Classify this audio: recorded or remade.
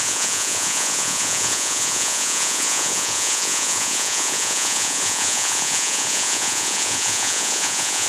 remade